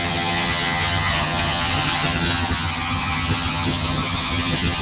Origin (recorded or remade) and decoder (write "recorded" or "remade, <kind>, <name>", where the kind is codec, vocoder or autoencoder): remade, vocoder, HiFi-GAN